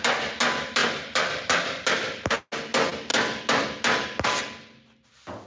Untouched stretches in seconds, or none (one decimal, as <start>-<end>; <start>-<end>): 0.0-5.5